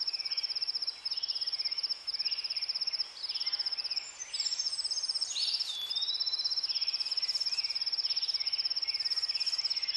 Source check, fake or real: fake